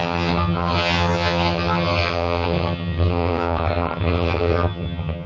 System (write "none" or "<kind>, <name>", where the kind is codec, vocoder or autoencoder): vocoder, HiFi-GAN